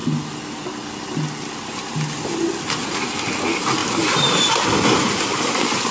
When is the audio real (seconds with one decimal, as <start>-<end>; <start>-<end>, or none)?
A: 0.0-3.8